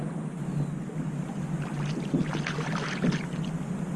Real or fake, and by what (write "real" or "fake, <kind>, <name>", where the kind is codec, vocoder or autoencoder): real